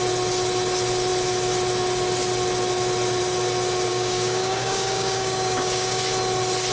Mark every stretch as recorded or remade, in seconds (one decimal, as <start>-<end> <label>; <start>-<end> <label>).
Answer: 0.0-3.9 recorded; 3.9-6.0 remade; 6.0-6.7 recorded